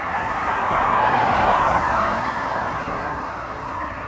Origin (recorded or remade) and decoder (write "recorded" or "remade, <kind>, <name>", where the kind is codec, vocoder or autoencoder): remade, codec, SNAC